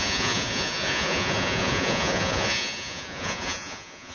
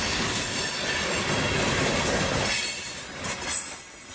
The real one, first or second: second